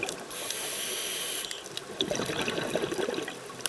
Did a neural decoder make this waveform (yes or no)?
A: no